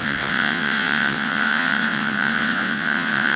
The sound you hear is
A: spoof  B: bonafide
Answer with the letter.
A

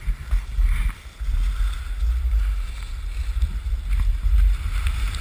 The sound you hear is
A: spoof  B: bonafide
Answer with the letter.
B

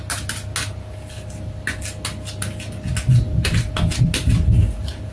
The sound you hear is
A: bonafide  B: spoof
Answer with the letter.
A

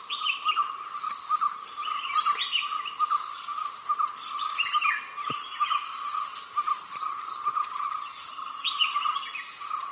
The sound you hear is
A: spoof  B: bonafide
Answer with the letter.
B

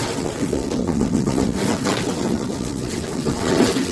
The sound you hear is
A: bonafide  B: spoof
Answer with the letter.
B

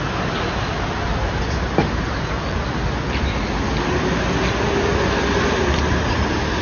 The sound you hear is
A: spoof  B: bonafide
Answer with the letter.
B